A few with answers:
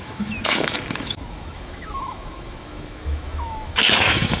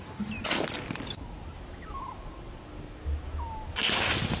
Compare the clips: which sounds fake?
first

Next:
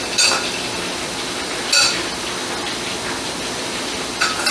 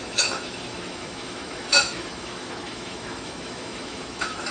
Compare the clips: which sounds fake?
second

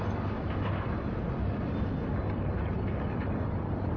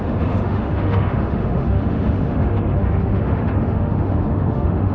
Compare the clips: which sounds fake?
second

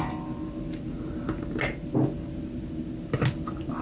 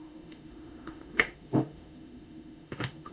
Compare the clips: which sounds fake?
second